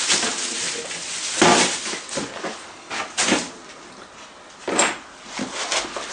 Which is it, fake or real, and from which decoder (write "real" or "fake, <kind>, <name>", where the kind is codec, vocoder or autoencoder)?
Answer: real